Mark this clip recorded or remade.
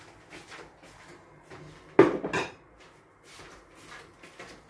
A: recorded